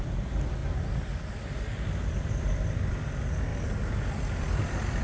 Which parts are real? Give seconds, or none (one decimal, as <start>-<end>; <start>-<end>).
0.0-5.0